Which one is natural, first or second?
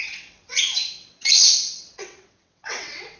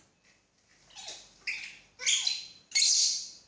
second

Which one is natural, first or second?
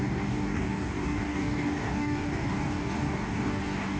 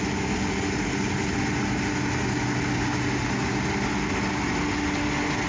second